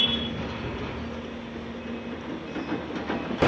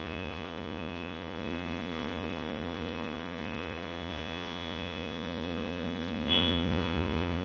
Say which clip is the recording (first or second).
first